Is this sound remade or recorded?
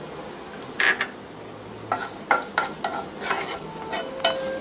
recorded